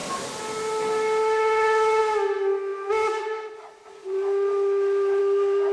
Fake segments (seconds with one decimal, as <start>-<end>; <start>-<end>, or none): none